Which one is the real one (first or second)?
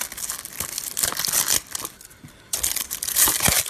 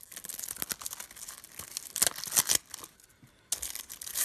second